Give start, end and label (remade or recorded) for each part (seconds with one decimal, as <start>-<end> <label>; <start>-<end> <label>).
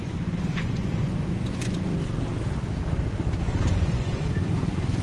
0.0-1.9 remade; 1.9-3.7 recorded; 3.7-5.0 remade